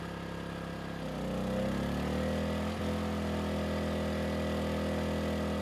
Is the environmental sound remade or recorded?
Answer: recorded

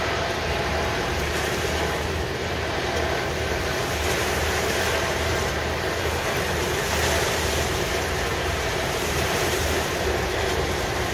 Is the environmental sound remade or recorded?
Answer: remade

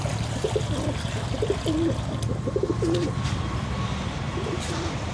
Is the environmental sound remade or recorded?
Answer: remade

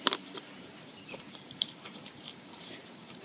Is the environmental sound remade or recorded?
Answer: remade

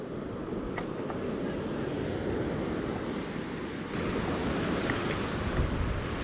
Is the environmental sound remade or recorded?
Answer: recorded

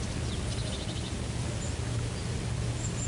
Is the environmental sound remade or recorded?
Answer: recorded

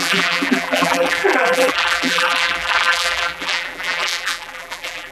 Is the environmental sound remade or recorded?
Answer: remade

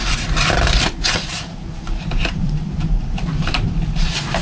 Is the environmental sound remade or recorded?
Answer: remade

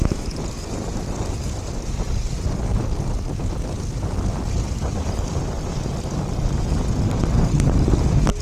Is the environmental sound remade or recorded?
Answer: recorded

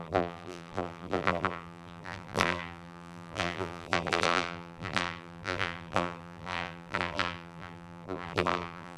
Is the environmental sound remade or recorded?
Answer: remade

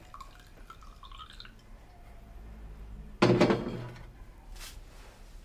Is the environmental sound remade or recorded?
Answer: recorded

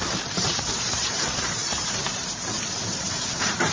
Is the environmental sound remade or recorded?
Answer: remade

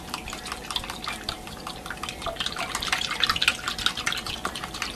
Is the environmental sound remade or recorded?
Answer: recorded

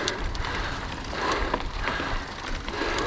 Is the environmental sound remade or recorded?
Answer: remade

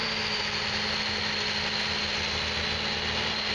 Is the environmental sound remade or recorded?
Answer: recorded